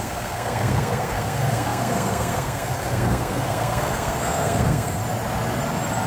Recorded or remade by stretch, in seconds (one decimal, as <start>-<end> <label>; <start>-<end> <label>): 0.0-5.0 remade; 5.0-6.1 recorded